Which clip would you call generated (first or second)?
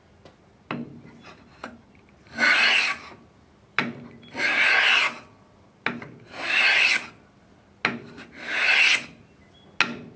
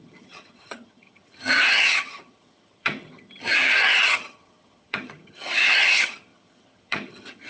second